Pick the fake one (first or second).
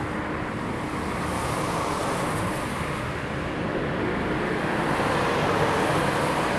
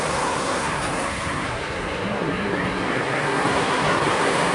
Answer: second